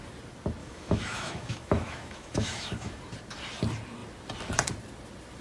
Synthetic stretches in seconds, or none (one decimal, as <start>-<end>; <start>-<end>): 0.6-3.0